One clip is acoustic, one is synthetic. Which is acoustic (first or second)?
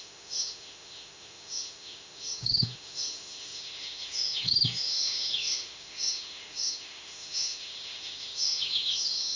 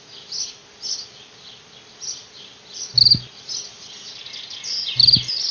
second